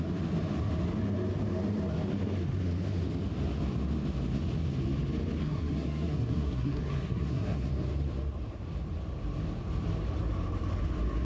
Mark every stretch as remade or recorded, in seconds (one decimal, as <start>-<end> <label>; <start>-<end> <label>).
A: 0.0-5.4 recorded; 5.4-7.7 remade; 7.7-11.2 recorded